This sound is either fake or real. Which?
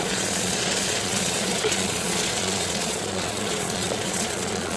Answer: fake